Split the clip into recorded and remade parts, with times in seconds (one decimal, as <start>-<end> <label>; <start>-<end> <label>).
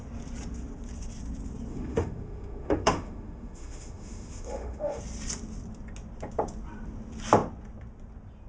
0.0-1.7 recorded; 1.7-5.0 remade; 5.0-8.5 recorded